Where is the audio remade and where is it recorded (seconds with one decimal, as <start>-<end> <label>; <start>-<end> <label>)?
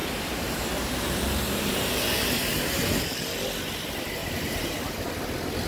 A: 0.0-2.9 remade; 2.9-4.2 recorded; 4.2-5.1 remade; 5.1-5.7 recorded